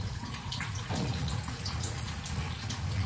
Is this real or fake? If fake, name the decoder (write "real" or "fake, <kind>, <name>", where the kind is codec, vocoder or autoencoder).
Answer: fake, vocoder, Vocos